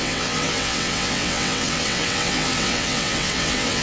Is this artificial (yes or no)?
yes